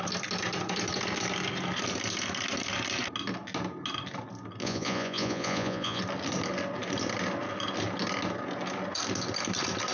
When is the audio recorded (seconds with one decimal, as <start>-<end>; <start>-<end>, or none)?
0.0-4.6; 6.0-9.9